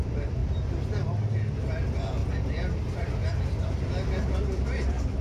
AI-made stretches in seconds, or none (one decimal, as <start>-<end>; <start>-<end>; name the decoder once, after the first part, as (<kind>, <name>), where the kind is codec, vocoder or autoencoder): 0.0-0.4 (vocoder, BigVGAN v2); 1.8-2.2; 2.8-5.2

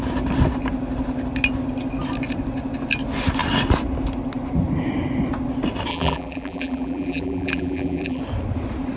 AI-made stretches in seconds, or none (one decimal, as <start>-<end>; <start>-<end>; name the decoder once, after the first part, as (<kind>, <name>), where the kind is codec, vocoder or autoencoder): 5.9-8.2 (vocoder, BigVGAN v2)

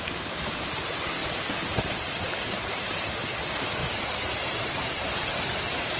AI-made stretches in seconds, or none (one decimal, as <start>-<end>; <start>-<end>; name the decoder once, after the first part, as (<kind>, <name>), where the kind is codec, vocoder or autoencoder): 0.0-6.0 (vocoder, BigVGAN v2)

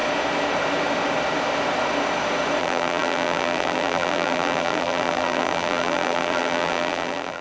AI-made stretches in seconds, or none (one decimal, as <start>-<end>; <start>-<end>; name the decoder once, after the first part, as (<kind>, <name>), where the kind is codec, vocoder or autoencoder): 2.6-7.4 (vocoder, BigVGAN v2)